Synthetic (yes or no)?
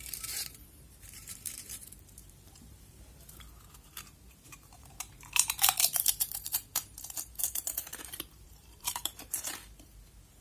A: yes